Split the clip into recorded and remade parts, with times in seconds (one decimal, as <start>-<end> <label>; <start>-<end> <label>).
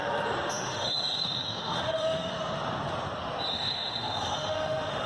0.0-0.5 recorded; 0.5-2.3 remade; 2.3-3.5 recorded; 3.5-5.1 remade